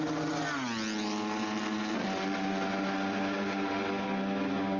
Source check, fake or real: real